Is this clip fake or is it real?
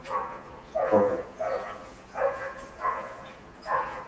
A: fake